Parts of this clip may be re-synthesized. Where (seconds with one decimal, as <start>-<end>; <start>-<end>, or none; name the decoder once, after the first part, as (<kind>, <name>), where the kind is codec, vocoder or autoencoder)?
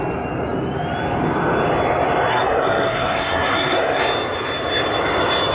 2.3-4.0 (codec, SNAC)